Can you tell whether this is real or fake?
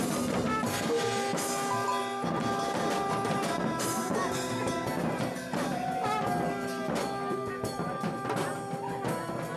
real